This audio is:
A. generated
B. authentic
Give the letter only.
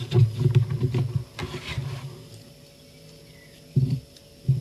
B